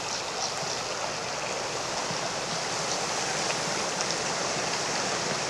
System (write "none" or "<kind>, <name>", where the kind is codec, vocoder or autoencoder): none